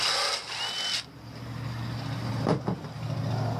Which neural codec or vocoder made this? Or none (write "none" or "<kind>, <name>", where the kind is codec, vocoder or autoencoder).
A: none